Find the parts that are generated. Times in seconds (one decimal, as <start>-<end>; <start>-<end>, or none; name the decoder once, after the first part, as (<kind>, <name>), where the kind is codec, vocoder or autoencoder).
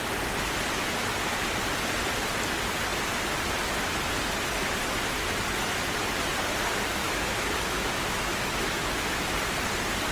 7.0-9.3 (autoencoder, DAC-VAE)